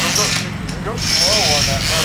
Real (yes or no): yes